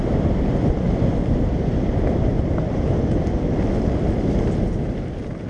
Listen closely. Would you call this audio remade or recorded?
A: recorded